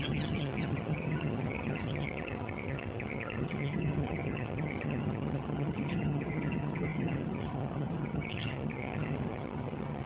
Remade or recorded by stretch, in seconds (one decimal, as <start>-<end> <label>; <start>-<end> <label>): 0.0-10.1 remade